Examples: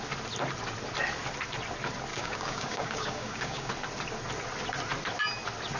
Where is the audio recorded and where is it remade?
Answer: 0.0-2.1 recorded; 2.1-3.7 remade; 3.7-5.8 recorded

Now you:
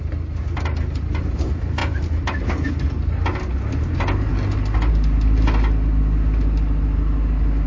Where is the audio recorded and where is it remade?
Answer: 0.0-7.7 recorded

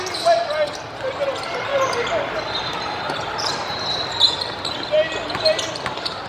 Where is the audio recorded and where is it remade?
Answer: 0.0-6.3 recorded

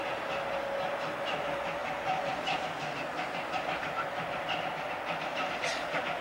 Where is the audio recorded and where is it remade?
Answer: 0.0-6.2 recorded

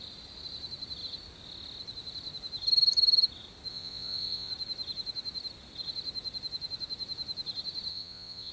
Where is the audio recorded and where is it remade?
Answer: 0.0-3.7 recorded; 3.7-4.5 remade; 4.5-7.9 recorded; 7.9-8.5 remade